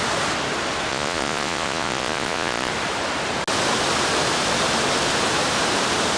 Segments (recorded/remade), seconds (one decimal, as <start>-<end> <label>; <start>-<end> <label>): 0.0-0.9 recorded; 0.9-2.7 remade; 2.7-6.2 recorded

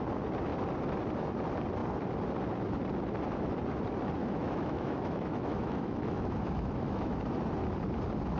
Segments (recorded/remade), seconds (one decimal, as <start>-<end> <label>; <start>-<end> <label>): 0.0-4.2 recorded; 4.2-7.2 remade; 7.2-8.4 recorded

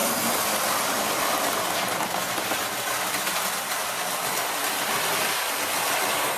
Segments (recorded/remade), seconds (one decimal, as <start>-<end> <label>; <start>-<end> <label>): 0.0-6.4 recorded

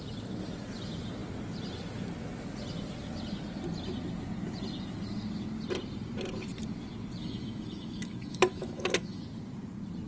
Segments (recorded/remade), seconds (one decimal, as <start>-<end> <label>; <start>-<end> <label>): 0.0-7.2 recorded; 7.2-9.2 remade; 9.2-10.1 recorded

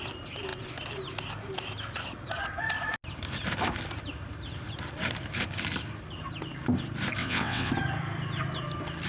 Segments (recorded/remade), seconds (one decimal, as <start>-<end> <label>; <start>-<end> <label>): 0.0-7.2 recorded; 7.2-7.7 remade; 7.7-9.1 recorded